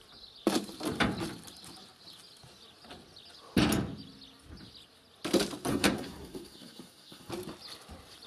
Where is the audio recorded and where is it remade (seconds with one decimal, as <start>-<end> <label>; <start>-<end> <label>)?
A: 0.0-5.7 recorded; 5.7-7.3 remade; 7.3-8.3 recorded